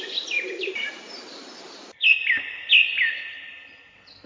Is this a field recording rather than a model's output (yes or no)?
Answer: yes